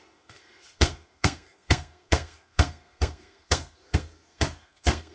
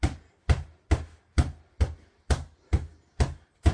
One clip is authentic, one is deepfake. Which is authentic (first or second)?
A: second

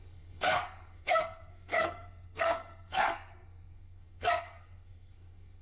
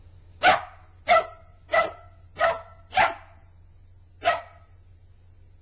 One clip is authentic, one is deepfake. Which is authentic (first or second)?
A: second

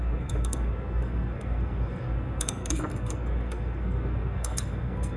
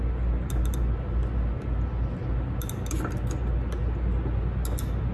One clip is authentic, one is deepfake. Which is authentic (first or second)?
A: second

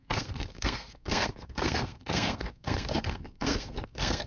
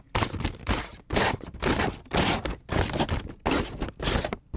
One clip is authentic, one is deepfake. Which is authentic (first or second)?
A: second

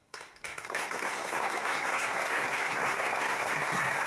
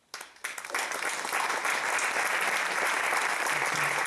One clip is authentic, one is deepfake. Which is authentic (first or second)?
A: second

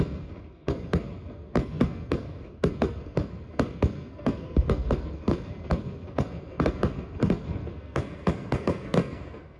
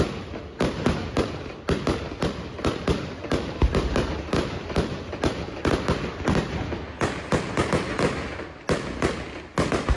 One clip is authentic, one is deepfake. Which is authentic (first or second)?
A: second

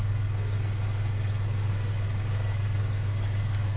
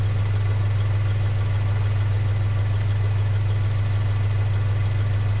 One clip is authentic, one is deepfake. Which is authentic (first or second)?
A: second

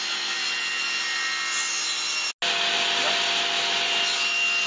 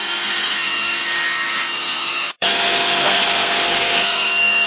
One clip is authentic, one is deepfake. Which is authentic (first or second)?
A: first